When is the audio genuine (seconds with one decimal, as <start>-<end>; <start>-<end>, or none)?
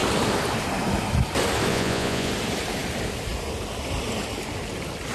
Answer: 0.0-1.7; 2.3-5.1